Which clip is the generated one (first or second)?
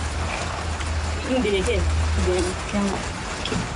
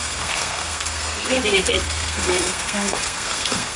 second